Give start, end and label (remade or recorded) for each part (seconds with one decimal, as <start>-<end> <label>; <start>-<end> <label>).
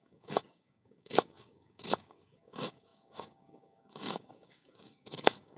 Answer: 0.0-5.6 remade